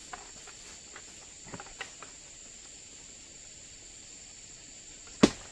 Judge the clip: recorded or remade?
recorded